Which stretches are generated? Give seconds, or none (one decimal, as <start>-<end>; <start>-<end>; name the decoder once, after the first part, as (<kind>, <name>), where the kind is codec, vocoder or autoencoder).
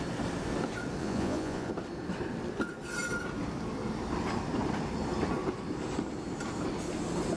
1.0-1.7 (vocoder, Vocos)